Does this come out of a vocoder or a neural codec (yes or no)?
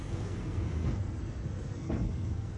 yes